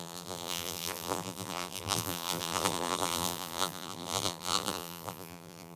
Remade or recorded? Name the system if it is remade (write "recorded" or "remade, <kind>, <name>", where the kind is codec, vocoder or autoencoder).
remade, vocoder, BigVGAN v2